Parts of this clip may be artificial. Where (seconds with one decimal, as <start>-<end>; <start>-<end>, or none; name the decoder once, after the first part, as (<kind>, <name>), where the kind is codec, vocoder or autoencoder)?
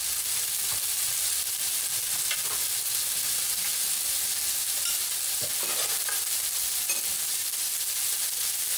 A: none